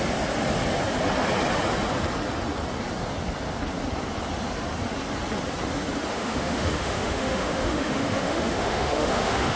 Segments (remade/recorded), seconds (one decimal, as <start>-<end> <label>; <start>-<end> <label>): 0.0-6.1 recorded; 6.1-9.6 remade